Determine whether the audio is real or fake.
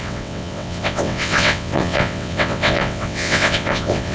fake